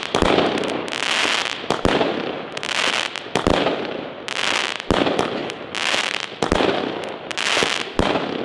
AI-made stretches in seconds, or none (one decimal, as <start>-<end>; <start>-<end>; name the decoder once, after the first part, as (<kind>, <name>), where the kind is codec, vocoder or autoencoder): none

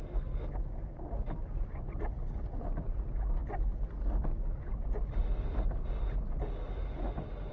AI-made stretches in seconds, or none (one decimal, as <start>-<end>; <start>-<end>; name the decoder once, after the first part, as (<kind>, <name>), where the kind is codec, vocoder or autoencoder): none

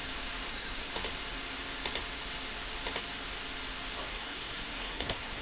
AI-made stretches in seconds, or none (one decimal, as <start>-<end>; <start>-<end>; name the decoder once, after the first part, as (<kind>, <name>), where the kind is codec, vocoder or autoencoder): 0.5-0.9 (codec, SNAC); 4.1-5.4

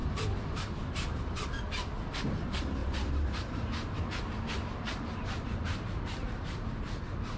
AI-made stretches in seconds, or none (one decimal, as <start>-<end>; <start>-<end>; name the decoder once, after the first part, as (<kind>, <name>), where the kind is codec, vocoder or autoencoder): 0.0-1.5 (vocoder, BigVGAN v2); 2.8-7.0

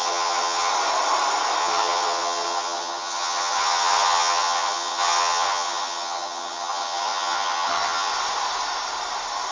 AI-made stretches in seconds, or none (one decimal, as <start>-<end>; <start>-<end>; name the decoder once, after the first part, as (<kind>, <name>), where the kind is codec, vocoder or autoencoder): 0.0-0.7 (vocoder, HiFi-GAN); 1.6-8.1

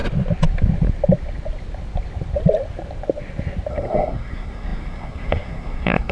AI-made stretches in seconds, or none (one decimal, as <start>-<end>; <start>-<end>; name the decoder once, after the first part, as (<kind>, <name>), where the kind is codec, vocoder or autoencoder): 3.7-6.1 (codec, SNAC)

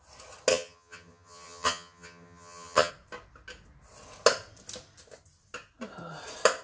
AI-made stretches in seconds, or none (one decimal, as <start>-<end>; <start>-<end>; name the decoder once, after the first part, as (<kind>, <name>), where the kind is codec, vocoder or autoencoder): 0.5-2.9 (vocoder, HiFi-GAN)